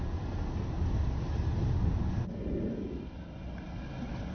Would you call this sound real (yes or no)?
yes